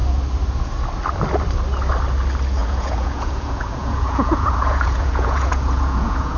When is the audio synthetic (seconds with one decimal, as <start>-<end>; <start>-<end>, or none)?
2.6-6.4